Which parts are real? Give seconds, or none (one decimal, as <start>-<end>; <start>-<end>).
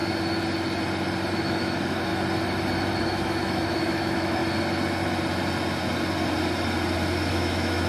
0.0-1.3; 2.1-3.0; 4.4-7.3